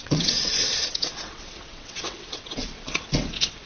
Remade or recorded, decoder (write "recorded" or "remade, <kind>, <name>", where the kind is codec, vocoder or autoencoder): remade, vocoder, WaveNeXt